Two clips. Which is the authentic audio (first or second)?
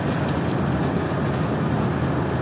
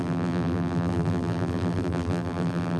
first